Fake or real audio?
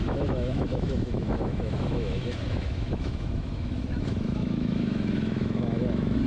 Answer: fake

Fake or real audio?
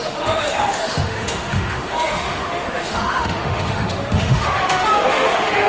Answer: fake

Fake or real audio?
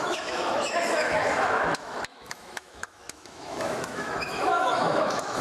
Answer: fake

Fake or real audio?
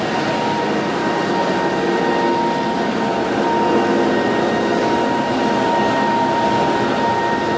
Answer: real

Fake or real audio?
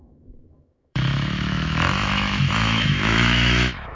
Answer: fake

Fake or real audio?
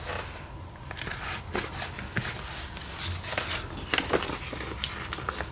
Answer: real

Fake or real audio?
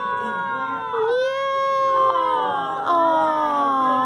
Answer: real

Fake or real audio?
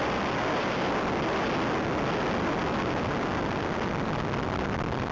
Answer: real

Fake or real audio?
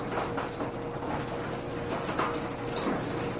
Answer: real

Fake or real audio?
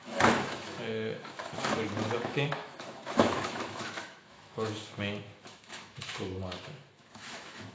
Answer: fake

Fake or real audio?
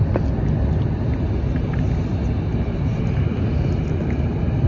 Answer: real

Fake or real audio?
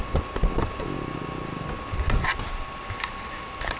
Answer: real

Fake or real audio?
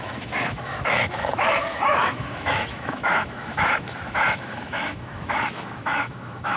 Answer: fake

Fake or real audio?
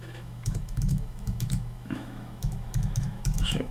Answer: fake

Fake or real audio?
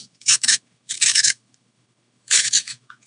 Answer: fake